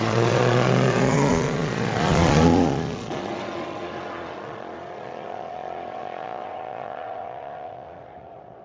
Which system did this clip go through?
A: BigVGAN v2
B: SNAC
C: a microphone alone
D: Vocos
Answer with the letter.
D